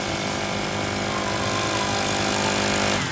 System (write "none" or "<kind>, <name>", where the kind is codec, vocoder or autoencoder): none